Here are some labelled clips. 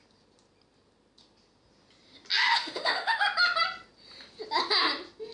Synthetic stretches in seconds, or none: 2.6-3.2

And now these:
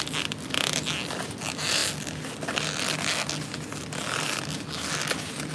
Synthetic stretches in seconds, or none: none

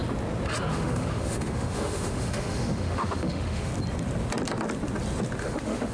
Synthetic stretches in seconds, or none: 0.7-3.7; 5.4-5.9

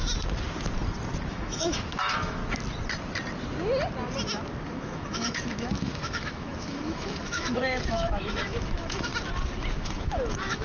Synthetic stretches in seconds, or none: 1.3-2.4; 4.7-9.1; 9.7-10.6

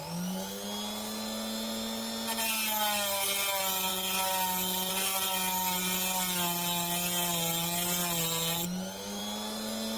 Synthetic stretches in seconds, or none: none

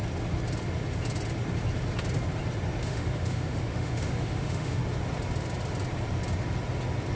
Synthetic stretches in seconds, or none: 2.8-4.8

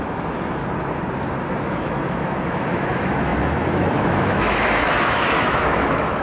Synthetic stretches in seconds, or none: 0.0-0.6; 1.4-6.2

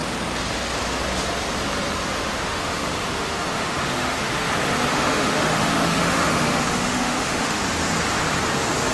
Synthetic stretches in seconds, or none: 2.1-4.5; 4.9-7.6